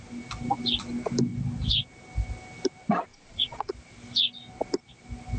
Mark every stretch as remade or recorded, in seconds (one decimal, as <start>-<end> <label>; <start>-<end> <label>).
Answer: 0.0-3.1 recorded; 3.1-3.7 remade; 3.7-5.4 recorded